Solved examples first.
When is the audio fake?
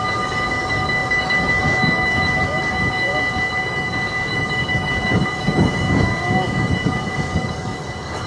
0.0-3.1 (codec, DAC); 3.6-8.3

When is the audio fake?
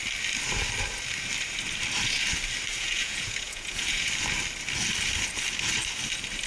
2.7-4.1 (vocoder, Vocos)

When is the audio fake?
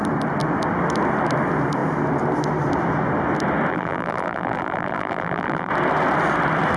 3.7-5.7 (vocoder, BigVGAN v2)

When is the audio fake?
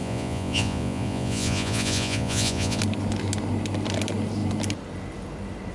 0.0-2.8 (vocoder, Vocos)